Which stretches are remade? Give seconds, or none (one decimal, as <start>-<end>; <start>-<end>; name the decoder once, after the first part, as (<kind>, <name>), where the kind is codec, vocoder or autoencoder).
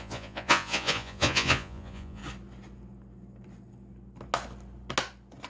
0.0-2.2 (vocoder, Vocos)